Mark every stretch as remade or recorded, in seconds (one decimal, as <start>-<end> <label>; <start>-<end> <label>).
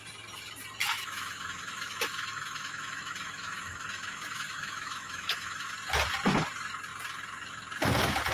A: 0.0-0.8 recorded; 0.8-5.7 remade; 5.7-8.3 recorded